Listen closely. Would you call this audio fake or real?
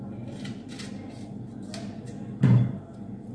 real